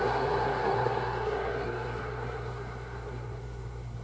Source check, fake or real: fake